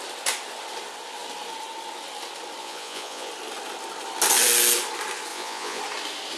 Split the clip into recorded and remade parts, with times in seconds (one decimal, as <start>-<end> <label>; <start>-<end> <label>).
0.0-2.6 recorded; 2.6-3.3 remade; 3.3-5.3 recorded; 5.3-5.8 remade; 5.8-6.4 recorded